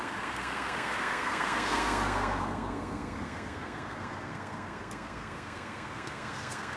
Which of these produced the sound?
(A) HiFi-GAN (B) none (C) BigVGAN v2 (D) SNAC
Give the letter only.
D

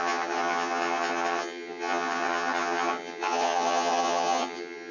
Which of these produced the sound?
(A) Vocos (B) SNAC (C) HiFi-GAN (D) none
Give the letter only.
C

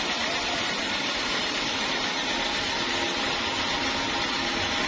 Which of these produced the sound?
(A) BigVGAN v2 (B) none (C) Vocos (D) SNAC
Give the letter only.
B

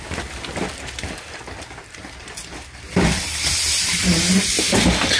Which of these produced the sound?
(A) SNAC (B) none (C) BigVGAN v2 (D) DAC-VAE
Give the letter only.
B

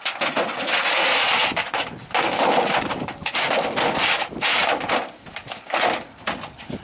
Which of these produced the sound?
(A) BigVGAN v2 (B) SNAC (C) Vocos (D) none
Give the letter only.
D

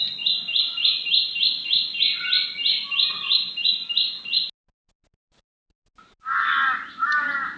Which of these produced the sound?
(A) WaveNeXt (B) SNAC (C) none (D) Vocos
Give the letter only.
C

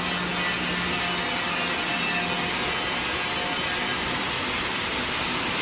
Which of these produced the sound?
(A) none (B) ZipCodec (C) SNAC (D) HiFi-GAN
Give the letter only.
A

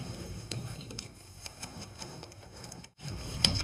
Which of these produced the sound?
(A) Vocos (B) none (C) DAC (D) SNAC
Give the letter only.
D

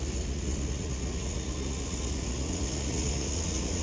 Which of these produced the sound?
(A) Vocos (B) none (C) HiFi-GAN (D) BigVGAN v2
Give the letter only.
A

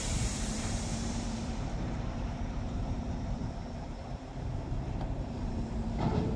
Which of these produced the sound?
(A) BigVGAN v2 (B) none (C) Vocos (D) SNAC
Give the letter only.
A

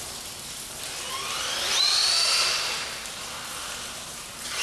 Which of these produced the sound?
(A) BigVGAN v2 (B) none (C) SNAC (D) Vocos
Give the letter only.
B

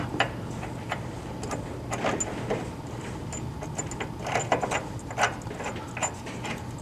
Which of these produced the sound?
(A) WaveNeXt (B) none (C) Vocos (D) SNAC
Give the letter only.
B